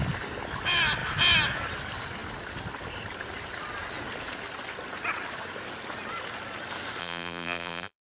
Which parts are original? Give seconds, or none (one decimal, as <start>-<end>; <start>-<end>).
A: 0.0-7.0